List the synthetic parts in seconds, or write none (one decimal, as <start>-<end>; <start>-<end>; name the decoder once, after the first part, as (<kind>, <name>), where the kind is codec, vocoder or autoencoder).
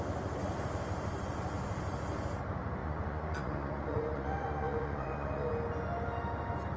2.8-5.5 (vocoder, Vocos)